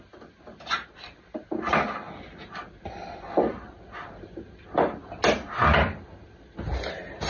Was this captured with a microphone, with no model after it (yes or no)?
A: yes